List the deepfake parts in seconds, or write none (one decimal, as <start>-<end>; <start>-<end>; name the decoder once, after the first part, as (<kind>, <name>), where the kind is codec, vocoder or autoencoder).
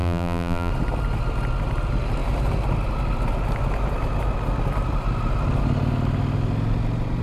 0.0-0.7 (vocoder, BigVGAN v2)